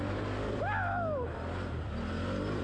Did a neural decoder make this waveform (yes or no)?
no